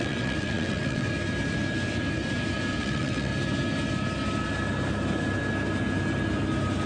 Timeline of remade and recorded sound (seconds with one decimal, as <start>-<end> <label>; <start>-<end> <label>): 0.0-1.1 remade; 1.1-2.8 recorded; 2.8-3.3 remade; 3.3-6.9 recorded